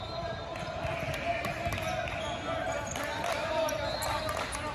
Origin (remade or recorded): recorded